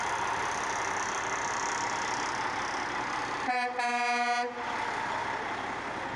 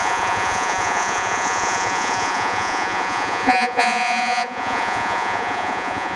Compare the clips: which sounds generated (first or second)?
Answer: second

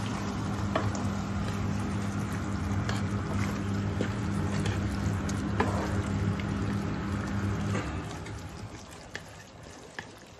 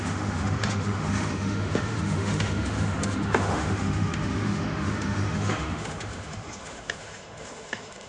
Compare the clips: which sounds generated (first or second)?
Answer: second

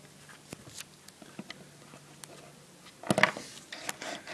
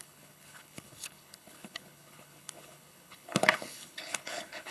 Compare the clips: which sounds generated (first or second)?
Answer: second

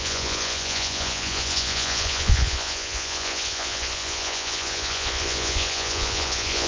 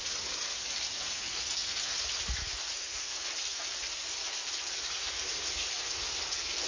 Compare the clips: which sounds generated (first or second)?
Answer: first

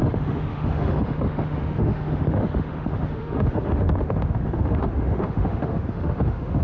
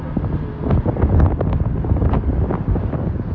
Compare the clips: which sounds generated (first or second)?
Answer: first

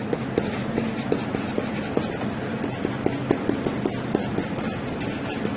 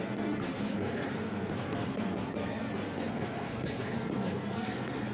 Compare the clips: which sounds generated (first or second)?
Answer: second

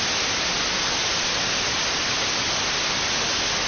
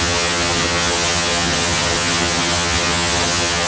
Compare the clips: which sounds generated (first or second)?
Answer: second